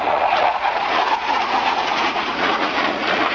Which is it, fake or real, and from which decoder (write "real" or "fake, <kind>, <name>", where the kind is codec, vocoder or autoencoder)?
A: fake, vocoder, Vocos